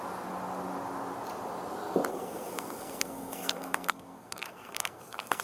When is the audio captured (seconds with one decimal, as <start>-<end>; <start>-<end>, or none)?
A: 0.0-2.1